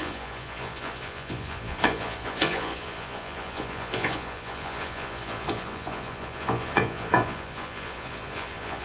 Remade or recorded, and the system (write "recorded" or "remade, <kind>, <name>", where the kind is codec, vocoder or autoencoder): remade, vocoder, Vocos